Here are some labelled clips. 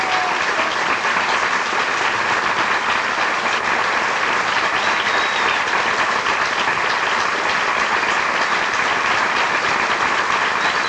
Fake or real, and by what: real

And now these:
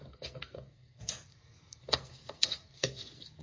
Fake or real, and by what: fake, codec, SNAC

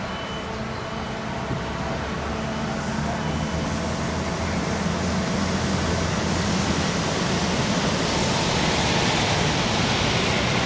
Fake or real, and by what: real